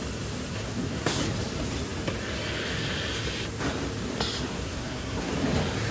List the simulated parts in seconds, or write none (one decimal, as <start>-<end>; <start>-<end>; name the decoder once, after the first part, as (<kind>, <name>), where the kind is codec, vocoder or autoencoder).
0.5-1.2 (codec, SNAC); 4.5-5.3